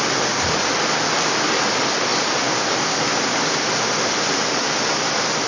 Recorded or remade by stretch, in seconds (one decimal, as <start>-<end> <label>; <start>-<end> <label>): 0.0-5.5 recorded